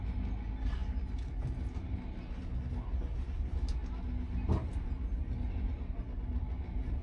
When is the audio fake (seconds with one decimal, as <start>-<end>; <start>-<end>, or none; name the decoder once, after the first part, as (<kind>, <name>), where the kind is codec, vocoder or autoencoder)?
none